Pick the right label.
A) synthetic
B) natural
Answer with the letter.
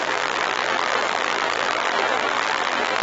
A